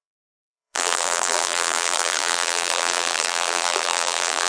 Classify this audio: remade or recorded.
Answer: remade